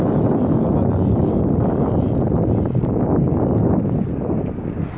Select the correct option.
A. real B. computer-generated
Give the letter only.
A